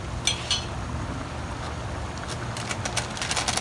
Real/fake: real